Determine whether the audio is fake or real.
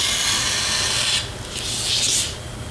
real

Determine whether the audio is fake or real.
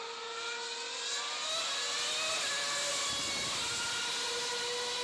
real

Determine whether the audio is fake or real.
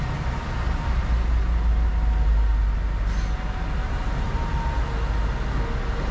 real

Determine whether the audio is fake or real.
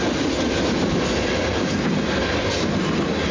real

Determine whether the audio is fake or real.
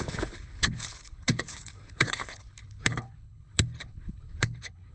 fake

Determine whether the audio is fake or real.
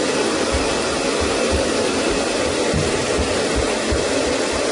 fake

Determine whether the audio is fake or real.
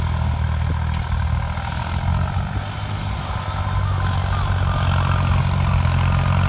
real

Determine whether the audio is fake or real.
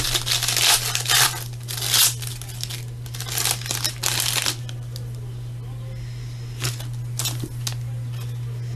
real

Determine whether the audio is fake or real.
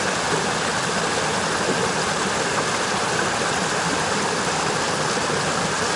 real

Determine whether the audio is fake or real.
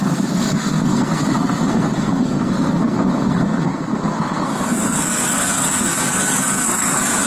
fake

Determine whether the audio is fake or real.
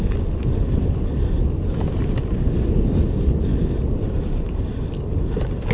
real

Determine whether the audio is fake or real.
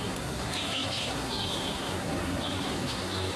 fake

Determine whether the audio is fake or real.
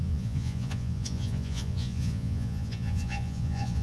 fake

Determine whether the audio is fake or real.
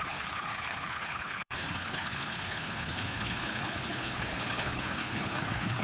fake